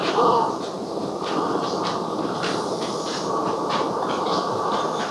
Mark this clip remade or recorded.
remade